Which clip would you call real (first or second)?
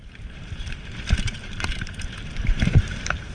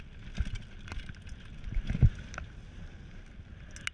second